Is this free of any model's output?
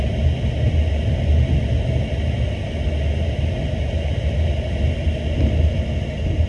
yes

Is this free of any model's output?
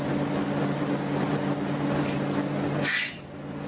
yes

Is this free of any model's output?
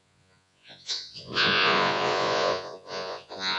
no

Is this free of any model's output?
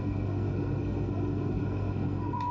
no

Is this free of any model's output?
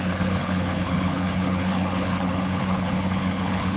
no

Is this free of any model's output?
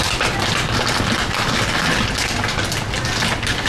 yes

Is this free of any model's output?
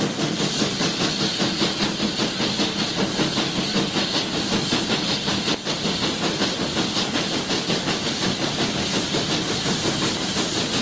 yes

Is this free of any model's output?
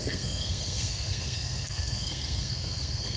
no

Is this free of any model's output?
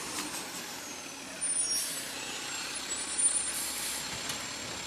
yes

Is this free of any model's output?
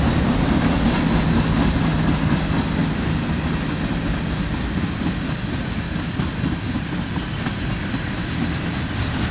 yes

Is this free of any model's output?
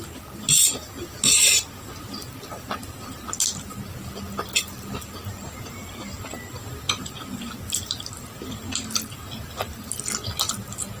yes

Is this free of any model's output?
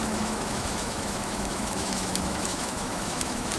no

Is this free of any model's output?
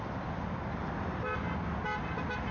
yes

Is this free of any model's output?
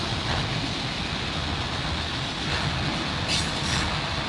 yes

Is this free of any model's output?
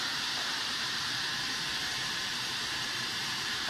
no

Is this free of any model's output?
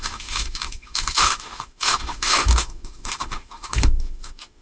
no